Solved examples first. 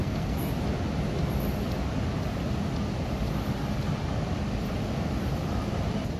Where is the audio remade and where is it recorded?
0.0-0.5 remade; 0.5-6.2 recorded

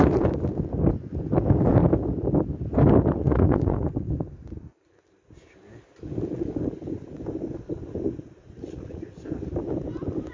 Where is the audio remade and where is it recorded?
0.0-3.2 recorded; 3.2-3.9 remade; 3.9-8.4 recorded; 8.4-9.1 remade; 9.1-10.3 recorded

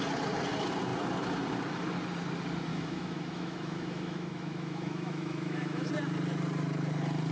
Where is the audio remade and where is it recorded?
0.0-2.7 recorded; 2.7-5.9 remade; 5.9-7.3 recorded